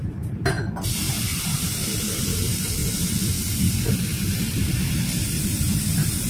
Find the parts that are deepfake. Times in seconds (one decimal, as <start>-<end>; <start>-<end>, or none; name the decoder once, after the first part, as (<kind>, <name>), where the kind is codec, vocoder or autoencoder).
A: 0.0-2.8 (vocoder, BigVGAN v2); 3.4-6.3